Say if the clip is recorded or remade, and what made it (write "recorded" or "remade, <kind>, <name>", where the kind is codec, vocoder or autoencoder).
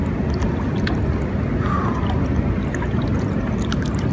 recorded